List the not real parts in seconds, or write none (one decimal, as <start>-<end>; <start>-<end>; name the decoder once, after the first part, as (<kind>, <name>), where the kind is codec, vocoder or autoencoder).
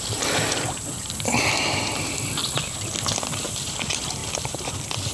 4.2-5.1 (vocoder, BigVGAN v2)